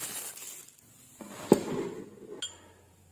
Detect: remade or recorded recorded